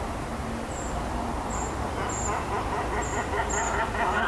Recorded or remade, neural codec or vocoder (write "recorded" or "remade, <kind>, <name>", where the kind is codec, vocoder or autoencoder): recorded